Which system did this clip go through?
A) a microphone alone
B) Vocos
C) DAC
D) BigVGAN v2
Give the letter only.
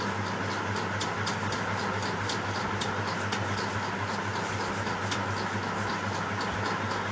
A